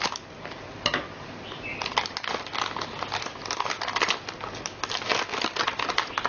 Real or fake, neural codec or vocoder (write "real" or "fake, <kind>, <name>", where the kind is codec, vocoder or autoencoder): real